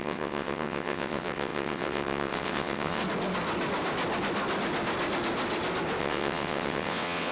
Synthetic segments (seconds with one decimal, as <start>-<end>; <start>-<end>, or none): 0.0-3.0; 6.0-7.3